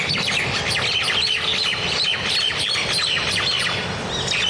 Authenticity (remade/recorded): recorded